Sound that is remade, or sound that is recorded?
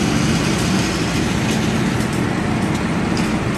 recorded